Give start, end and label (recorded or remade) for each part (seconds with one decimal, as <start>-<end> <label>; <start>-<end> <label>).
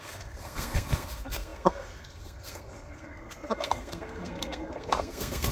0.0-5.5 remade